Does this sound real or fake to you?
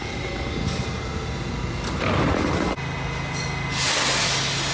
real